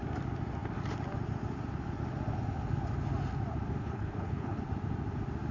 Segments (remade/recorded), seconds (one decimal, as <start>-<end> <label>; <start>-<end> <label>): 0.0-3.8 recorded; 3.8-4.6 remade; 4.6-5.5 recorded